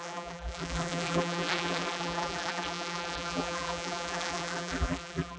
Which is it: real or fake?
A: fake